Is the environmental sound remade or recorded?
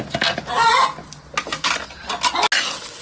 recorded